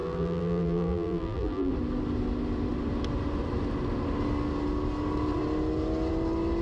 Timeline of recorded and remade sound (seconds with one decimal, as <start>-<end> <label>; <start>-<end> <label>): 0.0-1.7 remade; 1.7-6.6 recorded